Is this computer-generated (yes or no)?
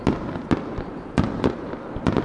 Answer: no